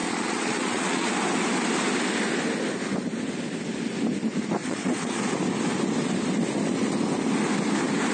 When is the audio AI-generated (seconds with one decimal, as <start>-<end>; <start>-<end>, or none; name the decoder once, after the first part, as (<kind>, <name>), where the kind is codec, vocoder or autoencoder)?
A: 0.0-1.1 (vocoder, Vocos); 4.6-5.2